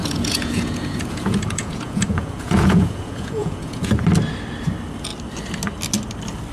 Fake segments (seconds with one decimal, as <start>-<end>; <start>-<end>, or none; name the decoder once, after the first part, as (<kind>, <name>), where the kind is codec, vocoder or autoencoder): 0.0-3.9 (vocoder, Vocos)